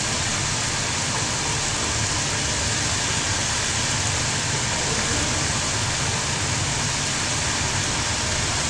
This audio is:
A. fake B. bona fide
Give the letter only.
B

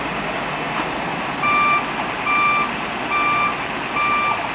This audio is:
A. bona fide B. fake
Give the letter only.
A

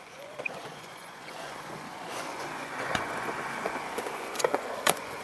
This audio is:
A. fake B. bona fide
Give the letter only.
A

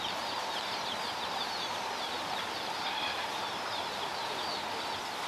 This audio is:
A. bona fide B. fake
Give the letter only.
A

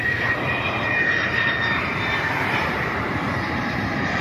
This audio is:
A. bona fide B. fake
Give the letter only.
B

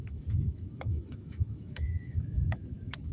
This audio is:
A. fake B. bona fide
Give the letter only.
A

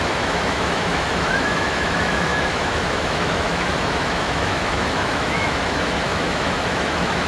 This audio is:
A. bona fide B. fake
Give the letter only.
B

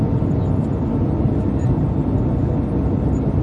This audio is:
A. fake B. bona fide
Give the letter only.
B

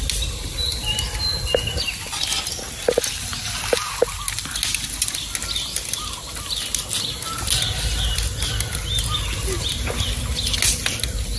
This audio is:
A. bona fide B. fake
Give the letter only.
A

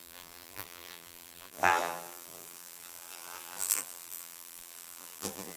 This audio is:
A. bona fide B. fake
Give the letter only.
B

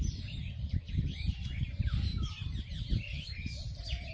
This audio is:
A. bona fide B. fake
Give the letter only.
B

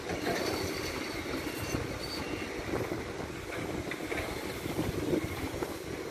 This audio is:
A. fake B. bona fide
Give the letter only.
B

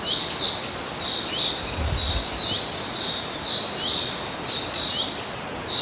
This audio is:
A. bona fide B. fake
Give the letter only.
A